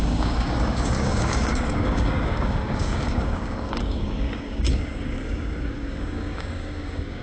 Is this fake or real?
fake